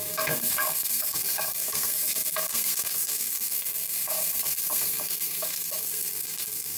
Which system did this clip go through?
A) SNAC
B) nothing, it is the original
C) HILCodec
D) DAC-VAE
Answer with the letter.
A